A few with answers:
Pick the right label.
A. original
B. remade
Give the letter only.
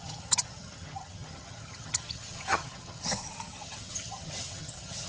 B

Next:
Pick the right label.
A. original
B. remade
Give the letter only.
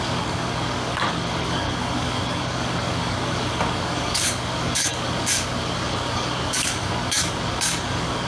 B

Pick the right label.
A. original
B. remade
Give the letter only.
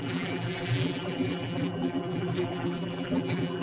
B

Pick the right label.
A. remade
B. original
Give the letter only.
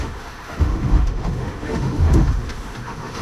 A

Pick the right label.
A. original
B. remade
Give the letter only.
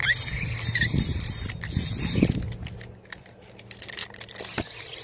A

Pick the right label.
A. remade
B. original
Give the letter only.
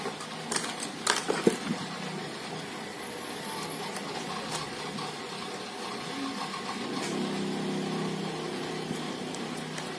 B